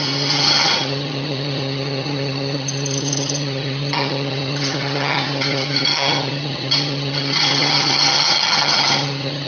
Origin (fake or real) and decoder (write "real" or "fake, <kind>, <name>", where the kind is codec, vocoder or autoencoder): fake, vocoder, HiFi-GAN